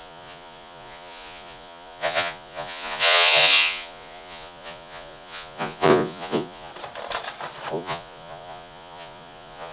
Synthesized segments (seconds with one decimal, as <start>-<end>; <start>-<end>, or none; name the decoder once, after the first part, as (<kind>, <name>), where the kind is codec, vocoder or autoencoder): 0.0-6.7 (vocoder, Vocos); 7.7-9.7